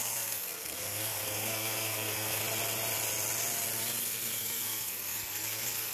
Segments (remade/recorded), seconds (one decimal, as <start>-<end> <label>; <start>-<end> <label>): 0.0-2.4 remade; 2.4-4.0 recorded; 4.0-5.9 remade